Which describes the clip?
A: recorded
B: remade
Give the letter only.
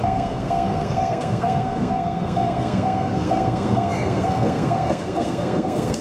B